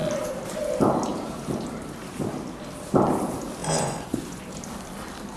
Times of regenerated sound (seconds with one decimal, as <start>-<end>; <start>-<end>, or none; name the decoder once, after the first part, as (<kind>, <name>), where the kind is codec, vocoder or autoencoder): 3.6-4.4 (vocoder, Vocos)